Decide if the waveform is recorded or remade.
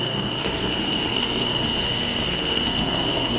remade